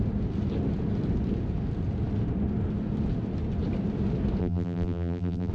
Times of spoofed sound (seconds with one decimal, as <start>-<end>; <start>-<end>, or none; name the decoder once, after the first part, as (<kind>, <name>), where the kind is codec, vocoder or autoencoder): 4.4-5.5 (vocoder, BigVGAN v2)